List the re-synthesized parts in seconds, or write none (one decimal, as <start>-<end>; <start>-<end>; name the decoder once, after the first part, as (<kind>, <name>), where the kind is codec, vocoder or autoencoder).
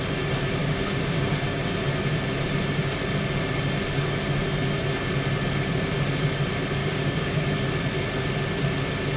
0.6-1.6 (codec, DAC); 6.8-7.4